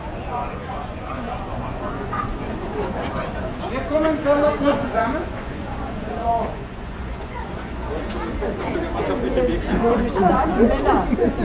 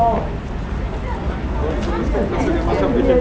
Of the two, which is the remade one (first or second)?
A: first